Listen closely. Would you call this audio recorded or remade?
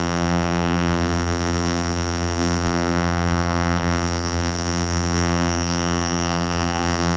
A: remade